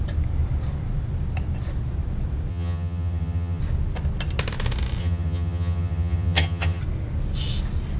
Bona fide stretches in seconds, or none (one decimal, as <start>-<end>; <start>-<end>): 0.0-2.5; 3.6-5.0; 6.8-8.0